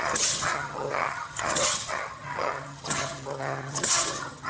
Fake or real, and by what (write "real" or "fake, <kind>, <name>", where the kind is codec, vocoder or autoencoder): fake, vocoder, HiFi-GAN